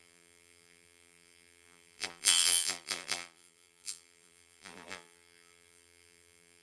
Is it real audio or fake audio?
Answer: fake